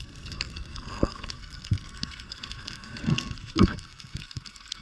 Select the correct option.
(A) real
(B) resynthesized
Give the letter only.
B